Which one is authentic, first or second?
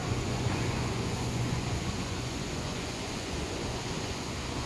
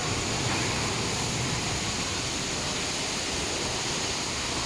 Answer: second